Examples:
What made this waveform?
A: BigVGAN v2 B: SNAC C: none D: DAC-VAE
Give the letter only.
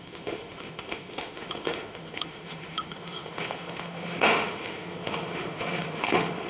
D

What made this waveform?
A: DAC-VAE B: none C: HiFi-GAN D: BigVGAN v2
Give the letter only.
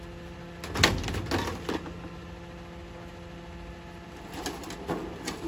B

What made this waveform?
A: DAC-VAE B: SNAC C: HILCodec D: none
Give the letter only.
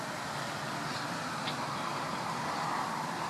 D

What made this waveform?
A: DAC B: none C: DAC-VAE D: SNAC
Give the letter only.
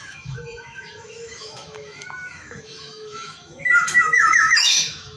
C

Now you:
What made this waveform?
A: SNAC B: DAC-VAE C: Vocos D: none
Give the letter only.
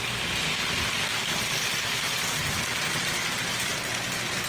D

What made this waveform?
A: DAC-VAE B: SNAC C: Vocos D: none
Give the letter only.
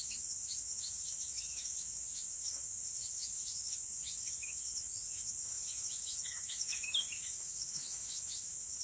A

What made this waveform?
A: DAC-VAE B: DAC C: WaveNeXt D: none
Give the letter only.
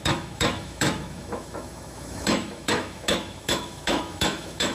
A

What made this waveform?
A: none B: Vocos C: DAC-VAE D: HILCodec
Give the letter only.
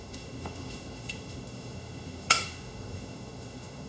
C